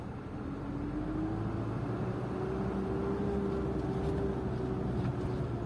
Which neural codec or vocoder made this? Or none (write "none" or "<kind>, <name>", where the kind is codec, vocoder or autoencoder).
none